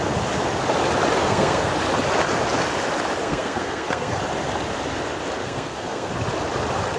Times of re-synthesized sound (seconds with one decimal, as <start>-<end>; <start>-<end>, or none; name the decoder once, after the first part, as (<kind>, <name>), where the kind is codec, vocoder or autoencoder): 1.2-1.7 (codec, SNAC); 3.2-4.2; 5.4-6.1